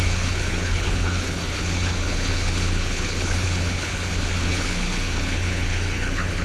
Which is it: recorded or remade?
remade